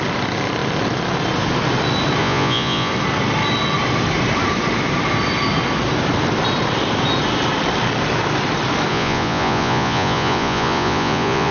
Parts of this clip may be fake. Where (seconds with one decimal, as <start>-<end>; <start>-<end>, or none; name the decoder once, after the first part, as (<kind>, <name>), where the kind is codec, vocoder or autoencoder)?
2.2-2.9 (vocoder, Vocos); 8.9-11.5